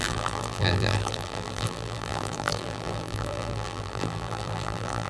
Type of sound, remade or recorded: remade